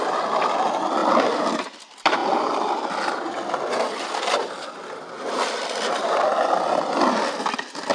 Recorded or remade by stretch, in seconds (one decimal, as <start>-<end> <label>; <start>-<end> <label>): 0.0-1.0 recorded; 1.0-1.6 remade; 1.6-2.2 recorded; 2.2-6.9 remade; 6.9-7.9 recorded